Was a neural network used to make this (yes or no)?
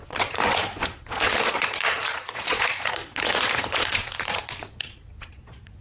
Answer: yes